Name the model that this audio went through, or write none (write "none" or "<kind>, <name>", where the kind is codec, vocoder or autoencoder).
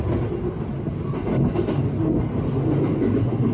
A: none